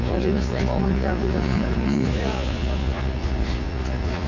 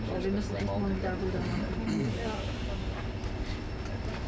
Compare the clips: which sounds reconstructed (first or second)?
first